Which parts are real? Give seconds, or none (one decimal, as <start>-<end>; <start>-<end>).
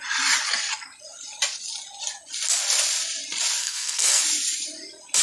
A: 0.0-3.6; 4.2-5.2